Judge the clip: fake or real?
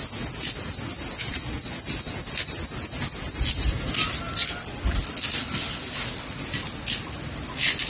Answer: real